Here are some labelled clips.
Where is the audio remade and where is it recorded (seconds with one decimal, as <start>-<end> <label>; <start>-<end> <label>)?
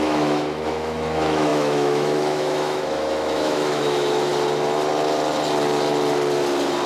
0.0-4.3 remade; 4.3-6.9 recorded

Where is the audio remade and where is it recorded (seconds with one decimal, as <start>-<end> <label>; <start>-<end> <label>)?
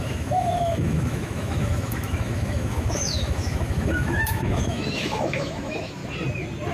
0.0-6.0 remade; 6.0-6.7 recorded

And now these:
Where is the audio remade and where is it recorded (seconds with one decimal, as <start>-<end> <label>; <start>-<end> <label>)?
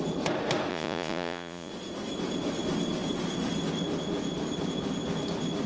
0.0-0.7 recorded; 0.7-1.7 remade; 1.7-5.7 recorded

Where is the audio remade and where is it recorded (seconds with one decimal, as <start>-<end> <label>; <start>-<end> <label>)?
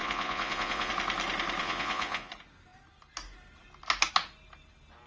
0.0-0.9 remade; 0.9-1.6 recorded; 1.6-2.3 remade; 2.3-5.1 recorded